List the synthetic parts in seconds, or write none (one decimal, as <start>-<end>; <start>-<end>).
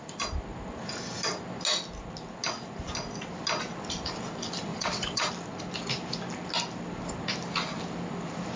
4.7-5.3